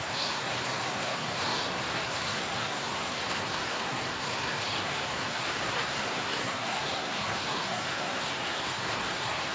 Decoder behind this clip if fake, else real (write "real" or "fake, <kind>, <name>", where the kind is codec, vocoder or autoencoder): fake, codec, SNAC